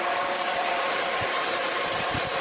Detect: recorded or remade recorded